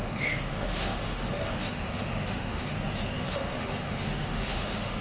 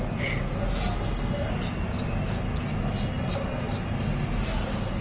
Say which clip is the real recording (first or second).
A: second